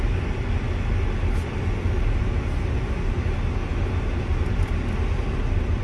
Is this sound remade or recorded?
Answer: recorded